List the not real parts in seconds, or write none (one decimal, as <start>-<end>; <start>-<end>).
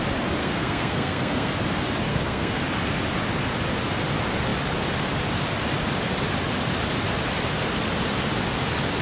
0.4-1.5; 2.1-2.6